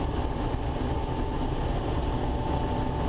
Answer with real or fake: real